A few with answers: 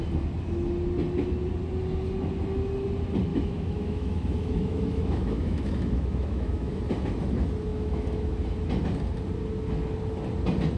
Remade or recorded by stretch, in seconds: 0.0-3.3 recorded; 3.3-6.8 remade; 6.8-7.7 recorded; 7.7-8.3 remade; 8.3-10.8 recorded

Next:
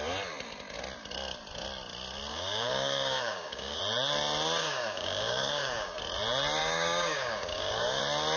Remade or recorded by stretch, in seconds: 0.0-2.3 recorded; 2.3-3.8 remade; 3.8-4.6 recorded; 4.6-6.0 remade; 6.0-6.6 recorded; 6.6-8.0 remade; 8.0-8.4 recorded